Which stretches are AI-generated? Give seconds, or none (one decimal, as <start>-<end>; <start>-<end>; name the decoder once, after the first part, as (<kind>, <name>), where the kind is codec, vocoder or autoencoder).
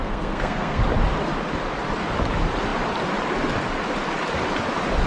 0.0-0.8 (codec, SNAC)